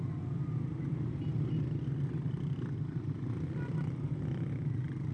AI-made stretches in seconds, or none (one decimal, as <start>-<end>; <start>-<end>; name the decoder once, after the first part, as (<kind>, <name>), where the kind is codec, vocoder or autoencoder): none